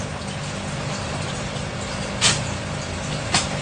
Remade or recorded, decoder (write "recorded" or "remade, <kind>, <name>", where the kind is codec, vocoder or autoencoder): recorded